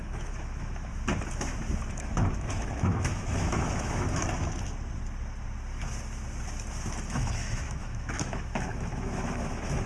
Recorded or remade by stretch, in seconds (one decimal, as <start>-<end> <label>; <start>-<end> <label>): 0.0-0.9 remade; 0.9-1.9 recorded; 1.9-4.2 remade; 4.2-7.1 recorded; 7.1-9.9 remade